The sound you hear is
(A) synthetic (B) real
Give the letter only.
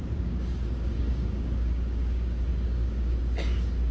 A